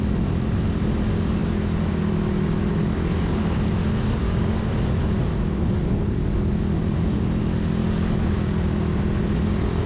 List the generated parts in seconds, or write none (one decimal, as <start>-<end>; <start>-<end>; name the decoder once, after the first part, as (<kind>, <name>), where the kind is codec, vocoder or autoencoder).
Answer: 4.2-4.7 (codec, DAC)